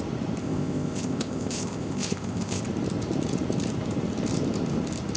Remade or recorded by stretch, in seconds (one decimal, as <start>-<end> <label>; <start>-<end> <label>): 0.0-0.4 recorded; 0.4-2.6 remade; 2.6-5.2 recorded